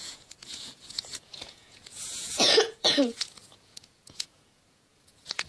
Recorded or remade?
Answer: remade